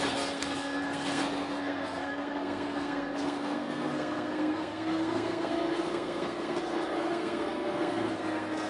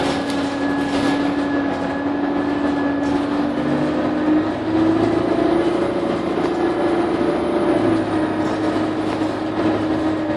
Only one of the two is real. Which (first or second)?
second